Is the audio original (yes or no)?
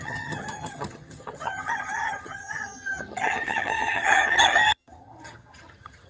no